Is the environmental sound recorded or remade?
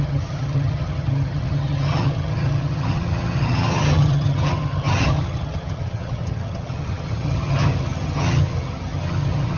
remade